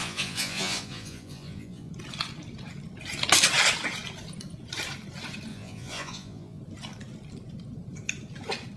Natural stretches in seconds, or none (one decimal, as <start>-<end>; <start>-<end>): 1.9-5.5; 6.6-8.8